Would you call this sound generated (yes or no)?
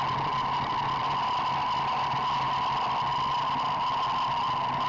no